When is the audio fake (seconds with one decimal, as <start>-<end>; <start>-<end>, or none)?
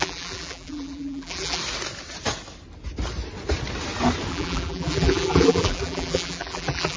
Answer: 0.0-1.6; 4.3-7.0